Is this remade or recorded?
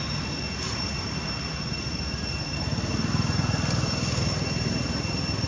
recorded